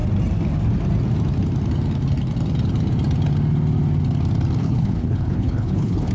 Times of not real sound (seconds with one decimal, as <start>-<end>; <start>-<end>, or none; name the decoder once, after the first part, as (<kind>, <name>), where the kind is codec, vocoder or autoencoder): 4.6-6.1 (codec, HILCodec)